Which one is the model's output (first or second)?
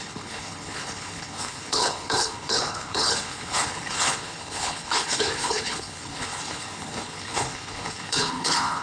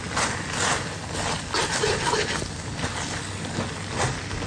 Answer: first